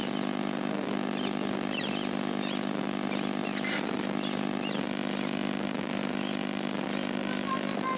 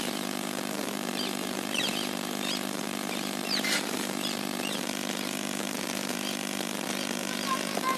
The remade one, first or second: second